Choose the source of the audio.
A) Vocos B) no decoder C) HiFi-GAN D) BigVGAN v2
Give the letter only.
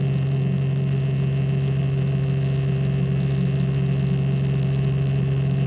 B